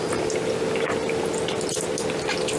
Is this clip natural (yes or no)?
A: yes